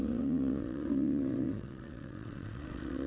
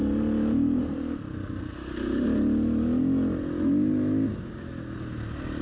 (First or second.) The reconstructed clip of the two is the first